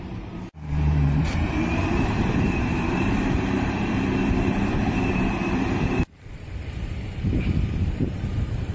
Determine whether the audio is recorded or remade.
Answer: remade